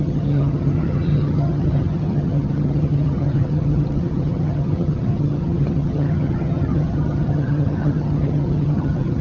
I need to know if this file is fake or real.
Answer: fake